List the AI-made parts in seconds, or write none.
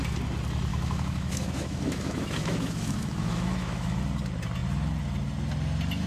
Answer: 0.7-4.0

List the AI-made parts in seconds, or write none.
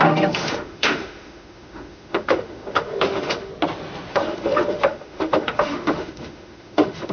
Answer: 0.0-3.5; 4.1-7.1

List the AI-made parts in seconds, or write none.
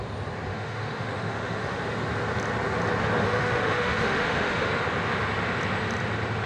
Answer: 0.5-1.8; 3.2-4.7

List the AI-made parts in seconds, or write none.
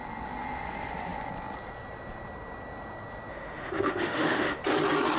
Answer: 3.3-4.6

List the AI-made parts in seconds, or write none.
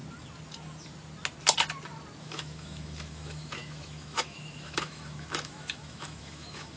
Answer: 2.2-6.8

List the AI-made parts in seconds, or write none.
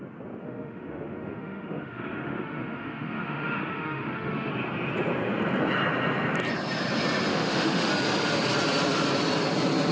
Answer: 0.4-4.5; 7.3-7.9